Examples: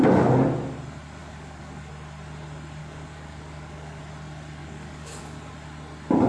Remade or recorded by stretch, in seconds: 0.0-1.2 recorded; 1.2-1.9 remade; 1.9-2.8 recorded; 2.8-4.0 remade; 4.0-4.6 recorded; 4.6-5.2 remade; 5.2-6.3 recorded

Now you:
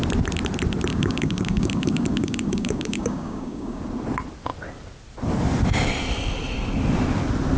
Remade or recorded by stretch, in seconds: 0.0-0.9 recorded; 0.9-3.8 remade; 3.8-7.6 recorded

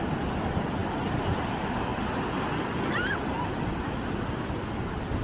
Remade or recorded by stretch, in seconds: 0.0-5.2 recorded